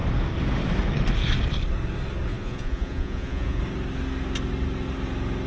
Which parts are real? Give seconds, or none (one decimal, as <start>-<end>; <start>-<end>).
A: 0.0-2.3; 3.6-5.5